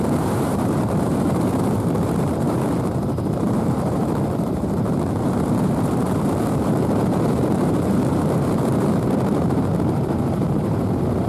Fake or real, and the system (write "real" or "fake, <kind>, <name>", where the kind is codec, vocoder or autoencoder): fake, vocoder, BigVGAN v2